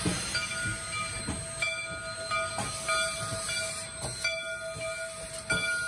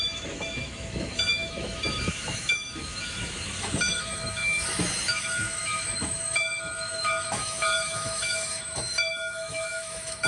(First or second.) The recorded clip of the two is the first